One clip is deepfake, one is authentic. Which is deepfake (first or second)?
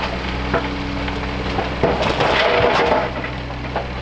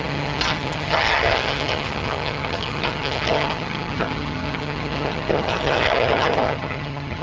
second